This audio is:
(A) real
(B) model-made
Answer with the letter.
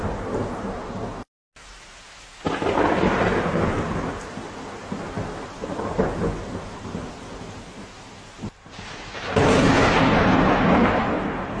A